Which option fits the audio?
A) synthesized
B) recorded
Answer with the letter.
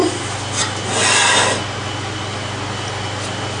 B